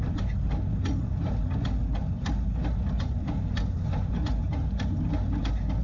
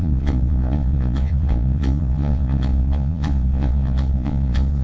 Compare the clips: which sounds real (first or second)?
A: first